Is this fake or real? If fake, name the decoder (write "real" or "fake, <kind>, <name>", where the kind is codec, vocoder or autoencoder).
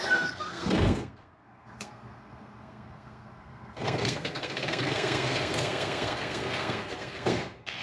fake, codec, SNAC